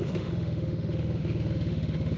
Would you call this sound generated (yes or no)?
yes